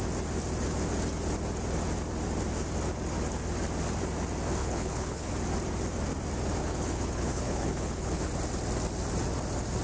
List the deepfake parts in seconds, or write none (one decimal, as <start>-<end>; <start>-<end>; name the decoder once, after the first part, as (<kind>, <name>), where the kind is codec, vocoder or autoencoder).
4.6-5.3 (codec, HILCodec); 6.6-8.2